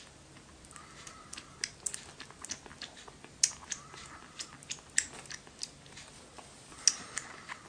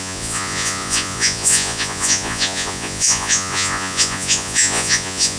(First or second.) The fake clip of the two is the second